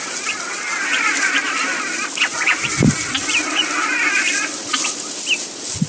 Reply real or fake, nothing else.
real